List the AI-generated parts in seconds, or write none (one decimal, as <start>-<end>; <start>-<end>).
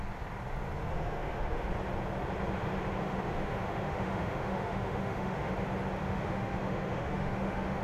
0.9-1.7; 3.0-5.5; 6.0-7.8